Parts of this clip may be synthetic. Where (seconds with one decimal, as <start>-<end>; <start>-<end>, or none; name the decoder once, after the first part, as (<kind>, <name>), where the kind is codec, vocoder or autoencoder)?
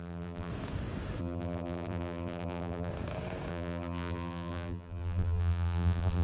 0.0-0.5 (vocoder, BigVGAN v2); 1.2-2.9; 3.5-6.2